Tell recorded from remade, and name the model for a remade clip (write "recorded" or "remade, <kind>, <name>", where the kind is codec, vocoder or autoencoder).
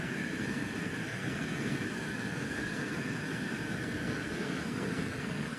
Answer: remade, codec, SNAC